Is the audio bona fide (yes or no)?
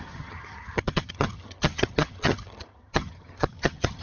no